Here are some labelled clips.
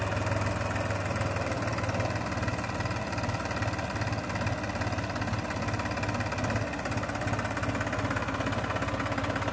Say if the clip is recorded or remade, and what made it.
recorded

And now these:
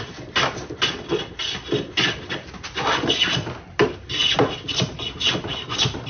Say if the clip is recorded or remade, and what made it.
recorded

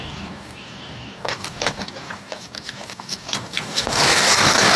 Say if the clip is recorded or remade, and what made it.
remade, codec, DAC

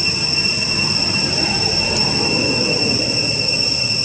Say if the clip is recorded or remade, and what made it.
recorded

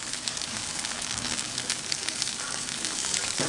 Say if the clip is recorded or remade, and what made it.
remade, codec, DAC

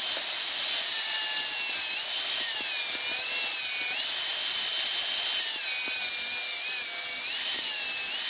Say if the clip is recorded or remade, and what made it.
recorded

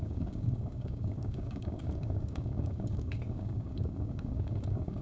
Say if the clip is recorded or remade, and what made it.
remade, codec, DAC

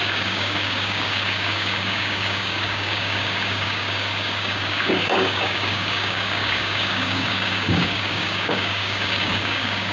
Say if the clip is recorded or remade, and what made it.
remade, codec, DAC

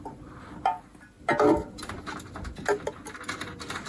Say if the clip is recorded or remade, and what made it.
recorded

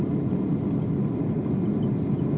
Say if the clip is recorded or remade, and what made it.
recorded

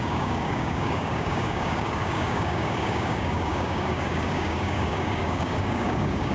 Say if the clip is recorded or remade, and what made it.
remade, codec, DAC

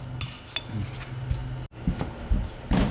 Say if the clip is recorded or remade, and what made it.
recorded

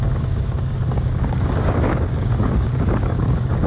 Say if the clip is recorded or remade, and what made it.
remade, codec, DAC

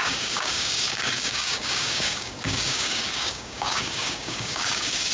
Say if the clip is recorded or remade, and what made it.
remade, codec, DAC